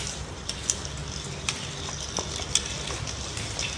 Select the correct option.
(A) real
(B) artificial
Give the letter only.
A